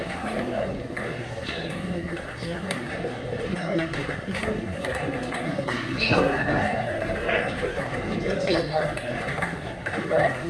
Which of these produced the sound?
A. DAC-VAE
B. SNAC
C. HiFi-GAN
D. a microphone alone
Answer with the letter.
B